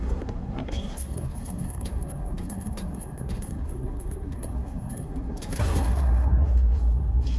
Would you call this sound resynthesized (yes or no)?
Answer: yes